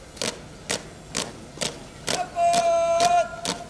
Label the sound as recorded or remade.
recorded